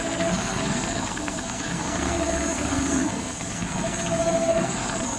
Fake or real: fake